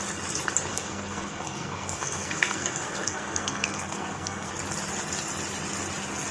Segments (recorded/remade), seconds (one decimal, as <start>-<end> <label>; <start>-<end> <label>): 0.0-0.7 recorded; 0.7-4.5 remade; 4.5-6.3 recorded